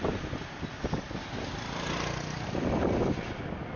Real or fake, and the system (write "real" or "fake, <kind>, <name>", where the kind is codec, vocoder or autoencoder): real